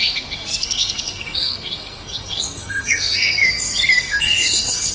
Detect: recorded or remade remade